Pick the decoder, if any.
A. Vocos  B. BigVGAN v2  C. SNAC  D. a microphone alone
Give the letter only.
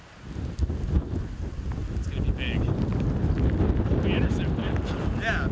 D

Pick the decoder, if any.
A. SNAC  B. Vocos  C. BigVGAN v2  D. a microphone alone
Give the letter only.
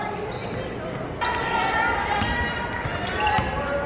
D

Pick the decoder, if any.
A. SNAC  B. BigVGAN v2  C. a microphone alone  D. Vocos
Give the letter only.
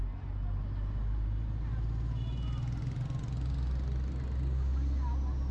C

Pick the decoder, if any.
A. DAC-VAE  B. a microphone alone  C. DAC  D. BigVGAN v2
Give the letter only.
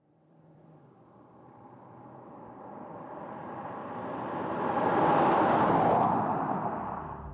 D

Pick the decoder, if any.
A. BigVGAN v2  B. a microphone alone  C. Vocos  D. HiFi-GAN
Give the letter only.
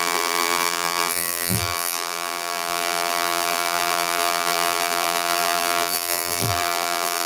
A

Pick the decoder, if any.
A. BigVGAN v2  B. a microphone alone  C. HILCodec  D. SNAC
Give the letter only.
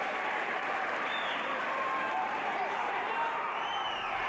A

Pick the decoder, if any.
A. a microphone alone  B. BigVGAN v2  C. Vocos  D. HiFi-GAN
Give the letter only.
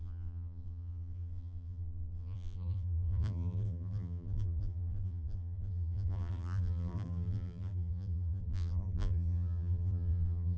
B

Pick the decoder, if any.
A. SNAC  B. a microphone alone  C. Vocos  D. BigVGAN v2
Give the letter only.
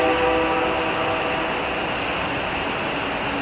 B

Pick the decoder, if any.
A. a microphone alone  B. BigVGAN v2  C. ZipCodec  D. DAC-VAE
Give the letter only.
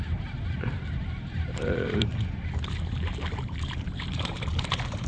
B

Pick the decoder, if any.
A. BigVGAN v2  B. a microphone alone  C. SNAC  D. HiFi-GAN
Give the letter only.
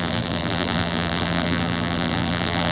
A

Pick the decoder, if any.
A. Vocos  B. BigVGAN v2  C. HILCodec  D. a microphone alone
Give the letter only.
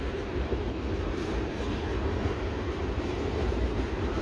B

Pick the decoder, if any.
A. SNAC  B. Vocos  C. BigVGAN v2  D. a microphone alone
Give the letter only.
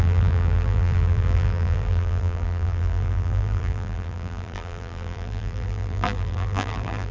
C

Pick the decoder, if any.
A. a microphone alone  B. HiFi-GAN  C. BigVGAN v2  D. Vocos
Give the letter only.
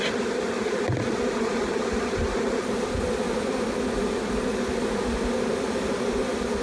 A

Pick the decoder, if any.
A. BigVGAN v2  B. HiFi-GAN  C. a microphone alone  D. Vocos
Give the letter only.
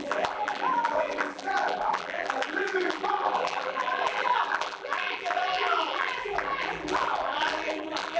A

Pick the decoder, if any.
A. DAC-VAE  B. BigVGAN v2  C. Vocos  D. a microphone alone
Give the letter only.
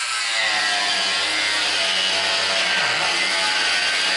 D